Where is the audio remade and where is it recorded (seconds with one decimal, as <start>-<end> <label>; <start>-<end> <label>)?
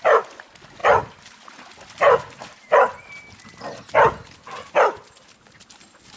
0.0-6.2 recorded